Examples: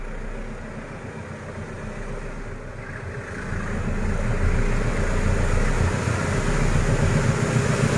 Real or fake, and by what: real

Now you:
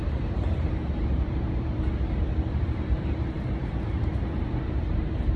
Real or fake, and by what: fake, vocoder, BigVGAN v2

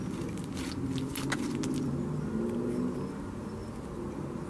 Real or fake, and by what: real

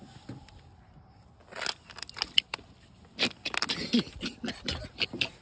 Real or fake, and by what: real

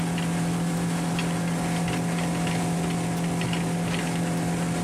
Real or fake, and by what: real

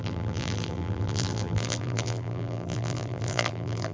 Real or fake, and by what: fake, vocoder, BigVGAN v2